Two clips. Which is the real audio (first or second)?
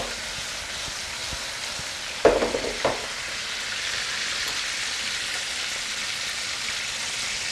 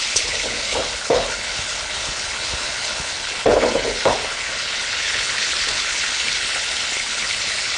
first